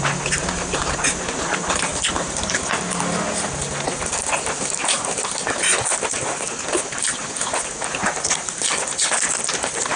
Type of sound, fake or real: real